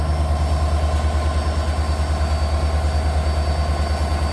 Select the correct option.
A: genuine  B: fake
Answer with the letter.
A